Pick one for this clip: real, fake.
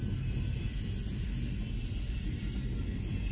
real